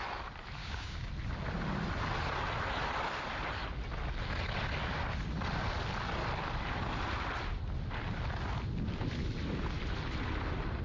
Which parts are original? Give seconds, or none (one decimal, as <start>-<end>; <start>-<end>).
0.0-0.6; 1.1-10.8